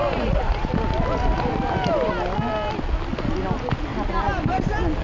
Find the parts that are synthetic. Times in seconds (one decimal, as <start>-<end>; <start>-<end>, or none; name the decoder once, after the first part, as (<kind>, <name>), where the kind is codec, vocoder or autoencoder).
0.0-0.7 (vocoder, Vocos)